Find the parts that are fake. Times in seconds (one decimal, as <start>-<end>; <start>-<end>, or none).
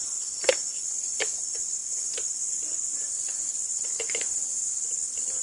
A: 0.0-0.5